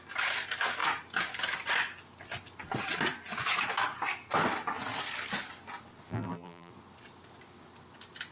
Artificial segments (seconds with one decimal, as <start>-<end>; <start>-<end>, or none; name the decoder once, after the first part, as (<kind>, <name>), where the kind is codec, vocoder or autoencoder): 6.1-6.7 (vocoder, BigVGAN v2)